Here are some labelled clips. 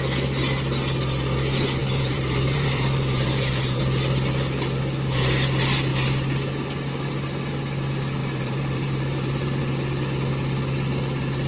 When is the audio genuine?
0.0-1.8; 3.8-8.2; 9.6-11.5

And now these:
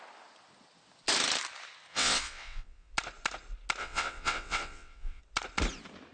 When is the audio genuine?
0.0-1.9; 2.9-3.8; 5.2-6.1

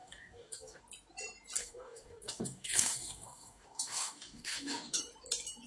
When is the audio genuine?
0.8-1.6; 5.0-5.7

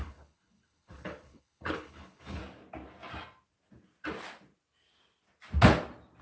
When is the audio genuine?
2.4-6.2